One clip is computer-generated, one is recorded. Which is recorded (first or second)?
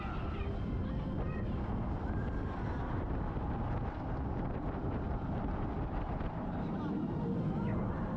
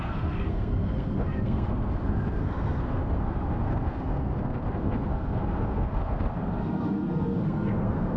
first